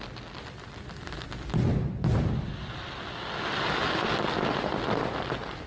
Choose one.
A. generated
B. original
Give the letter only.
B